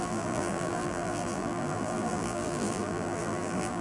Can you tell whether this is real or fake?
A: fake